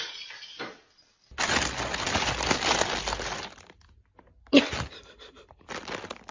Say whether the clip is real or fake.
real